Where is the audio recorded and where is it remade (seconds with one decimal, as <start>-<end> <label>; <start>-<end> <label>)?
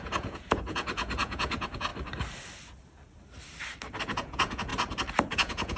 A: 0.0-1.9 remade; 1.9-4.0 recorded; 4.0-4.7 remade; 4.7-5.3 recorded; 5.3-5.8 remade